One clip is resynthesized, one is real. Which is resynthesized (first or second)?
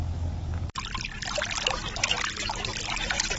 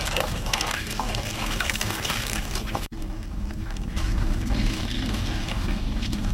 second